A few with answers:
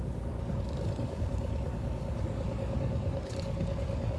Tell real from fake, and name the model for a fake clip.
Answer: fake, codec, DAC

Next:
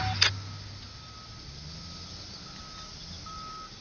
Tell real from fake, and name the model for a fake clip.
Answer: real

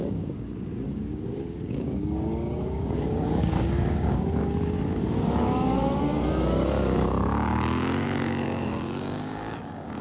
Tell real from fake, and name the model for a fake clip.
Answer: fake, codec, DAC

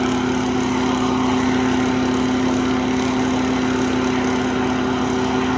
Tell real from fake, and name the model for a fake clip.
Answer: real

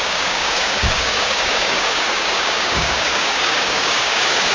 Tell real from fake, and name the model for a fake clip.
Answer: fake, codec, DAC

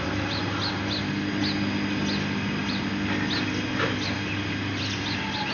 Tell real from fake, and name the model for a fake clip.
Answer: real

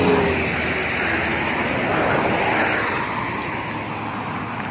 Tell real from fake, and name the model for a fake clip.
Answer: real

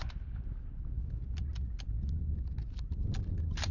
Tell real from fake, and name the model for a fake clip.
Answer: real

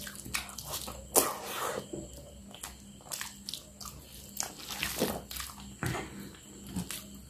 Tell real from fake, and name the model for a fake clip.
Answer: real